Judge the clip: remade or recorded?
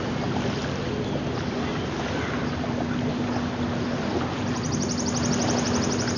recorded